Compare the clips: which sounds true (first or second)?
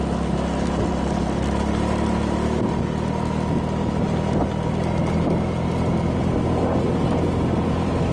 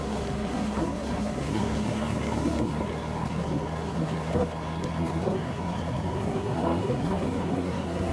first